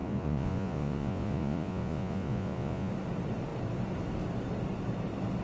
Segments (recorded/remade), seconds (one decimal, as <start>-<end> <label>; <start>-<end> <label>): 0.0-2.9 remade; 2.9-5.4 recorded